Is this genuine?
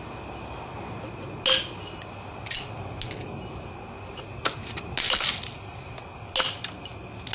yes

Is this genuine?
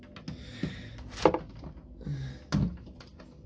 yes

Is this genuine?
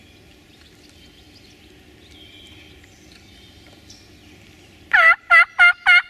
yes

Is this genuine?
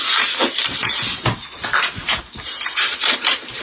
no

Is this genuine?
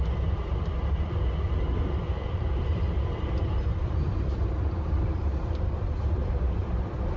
no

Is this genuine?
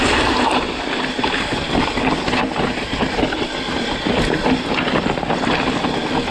yes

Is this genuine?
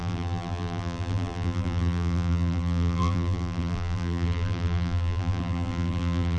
no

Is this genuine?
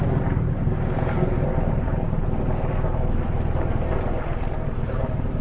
no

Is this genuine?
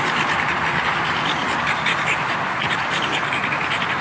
yes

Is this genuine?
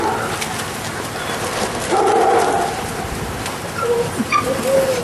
yes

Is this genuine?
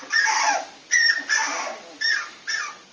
yes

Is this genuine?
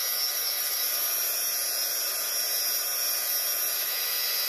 yes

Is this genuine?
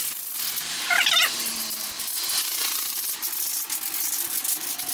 yes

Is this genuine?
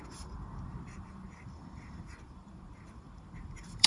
no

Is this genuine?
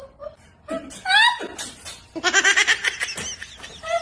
yes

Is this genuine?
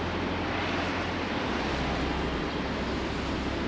no